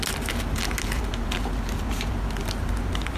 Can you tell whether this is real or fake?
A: real